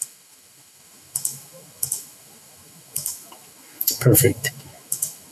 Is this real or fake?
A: fake